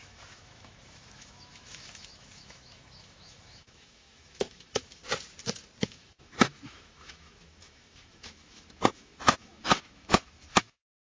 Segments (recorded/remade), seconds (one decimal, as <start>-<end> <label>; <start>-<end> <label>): 0.0-5.0 remade; 5.0-5.8 recorded; 5.8-11.1 remade